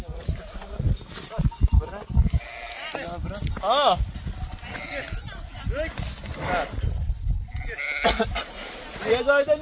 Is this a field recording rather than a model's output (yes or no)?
yes